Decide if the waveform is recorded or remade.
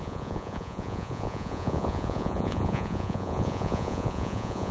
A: remade